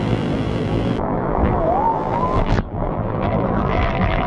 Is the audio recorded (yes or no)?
no